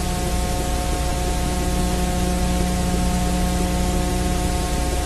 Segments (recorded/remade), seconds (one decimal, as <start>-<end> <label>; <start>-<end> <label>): 0.0-5.1 recorded